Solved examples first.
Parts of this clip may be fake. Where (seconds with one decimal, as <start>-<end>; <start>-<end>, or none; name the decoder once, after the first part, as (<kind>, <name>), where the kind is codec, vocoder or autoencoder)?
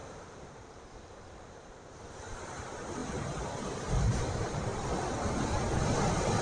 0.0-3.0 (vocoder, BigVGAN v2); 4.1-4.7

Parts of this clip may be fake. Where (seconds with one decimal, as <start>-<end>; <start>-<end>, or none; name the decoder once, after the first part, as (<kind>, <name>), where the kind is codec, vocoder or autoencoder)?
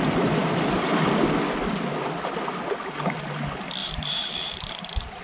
3.8-5.2 (vocoder, BigVGAN v2)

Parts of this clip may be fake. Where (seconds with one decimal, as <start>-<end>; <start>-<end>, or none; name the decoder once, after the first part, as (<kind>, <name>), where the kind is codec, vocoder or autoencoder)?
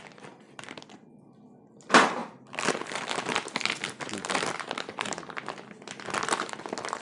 none